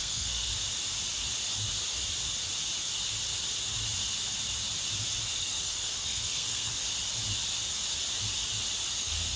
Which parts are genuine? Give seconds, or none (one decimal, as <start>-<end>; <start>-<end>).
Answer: 0.5-5.4; 6.7-9.0